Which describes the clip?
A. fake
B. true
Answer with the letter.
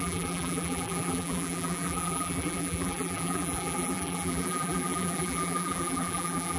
A